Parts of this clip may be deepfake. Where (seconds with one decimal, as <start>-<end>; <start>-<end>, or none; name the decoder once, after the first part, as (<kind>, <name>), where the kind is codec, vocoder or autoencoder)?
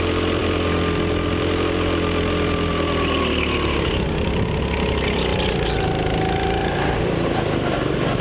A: none